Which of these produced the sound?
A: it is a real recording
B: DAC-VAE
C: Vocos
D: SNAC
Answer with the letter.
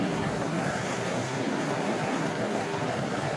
D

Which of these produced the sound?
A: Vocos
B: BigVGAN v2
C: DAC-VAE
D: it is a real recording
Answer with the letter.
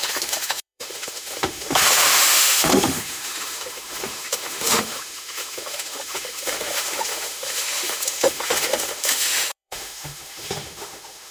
C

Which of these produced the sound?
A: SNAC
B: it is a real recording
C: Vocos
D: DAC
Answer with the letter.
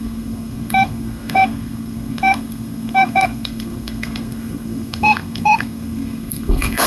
A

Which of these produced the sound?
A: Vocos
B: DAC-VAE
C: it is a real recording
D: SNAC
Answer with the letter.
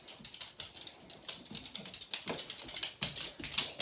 C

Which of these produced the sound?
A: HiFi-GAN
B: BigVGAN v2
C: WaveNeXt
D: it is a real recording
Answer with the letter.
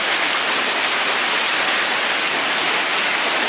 D